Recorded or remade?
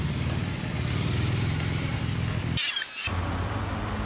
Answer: recorded